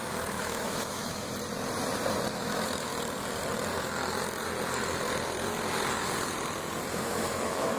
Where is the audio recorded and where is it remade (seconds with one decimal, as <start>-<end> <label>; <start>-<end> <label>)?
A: 0.0-1.3 remade; 1.3-2.3 recorded; 2.3-2.9 remade; 2.9-6.9 recorded; 6.9-7.8 remade